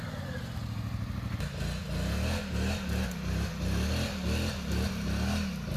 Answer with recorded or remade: recorded